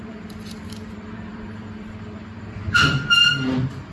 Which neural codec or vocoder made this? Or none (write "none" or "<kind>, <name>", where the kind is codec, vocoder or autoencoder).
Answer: vocoder, BigVGAN v2